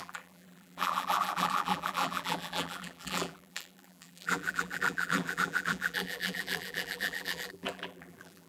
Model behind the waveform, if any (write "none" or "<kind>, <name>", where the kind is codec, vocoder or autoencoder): vocoder, BigVGAN v2